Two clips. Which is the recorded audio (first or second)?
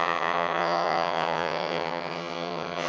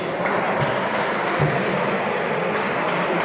second